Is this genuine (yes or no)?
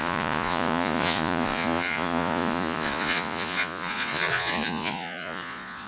no